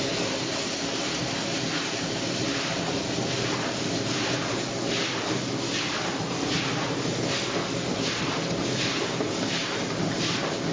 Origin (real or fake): real